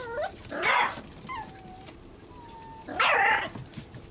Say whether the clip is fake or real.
real